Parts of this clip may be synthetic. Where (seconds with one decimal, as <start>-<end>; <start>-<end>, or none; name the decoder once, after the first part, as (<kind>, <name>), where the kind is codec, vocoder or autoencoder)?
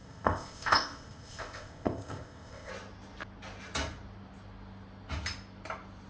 0.0-2.7 (codec, ZipCodec)